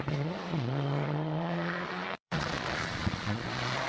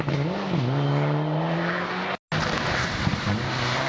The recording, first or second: second